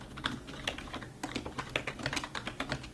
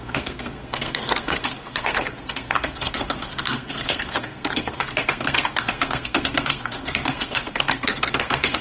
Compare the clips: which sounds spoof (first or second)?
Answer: second